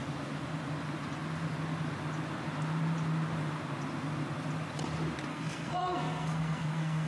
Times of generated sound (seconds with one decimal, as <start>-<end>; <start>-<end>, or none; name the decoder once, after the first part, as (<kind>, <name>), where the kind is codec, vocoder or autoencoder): 5.3-7.1 (codec, SNAC)